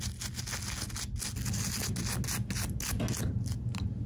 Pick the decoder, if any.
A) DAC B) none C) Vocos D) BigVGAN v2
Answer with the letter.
B